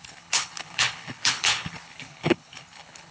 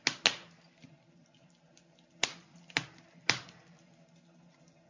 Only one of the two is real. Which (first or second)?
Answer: second